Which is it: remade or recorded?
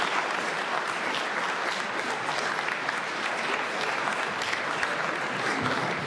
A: recorded